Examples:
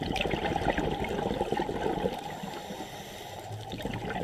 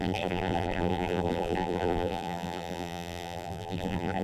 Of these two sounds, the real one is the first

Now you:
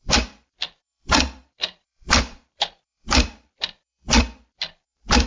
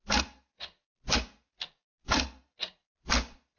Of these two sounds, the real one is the second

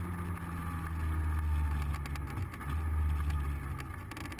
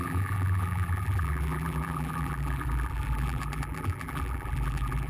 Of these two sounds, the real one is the first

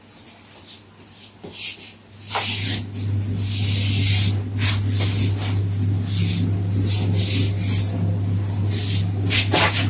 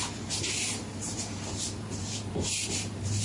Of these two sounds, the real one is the first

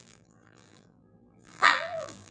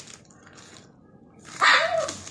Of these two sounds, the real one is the second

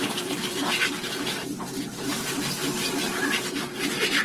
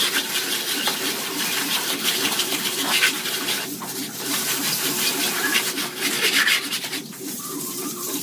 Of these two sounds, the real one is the first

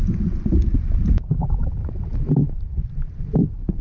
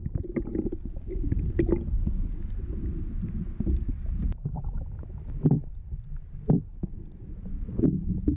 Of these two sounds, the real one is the second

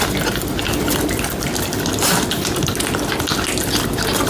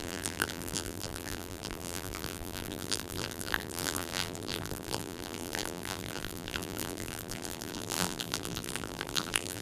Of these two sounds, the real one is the first